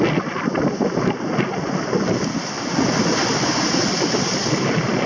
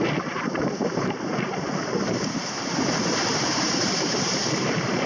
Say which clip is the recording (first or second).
first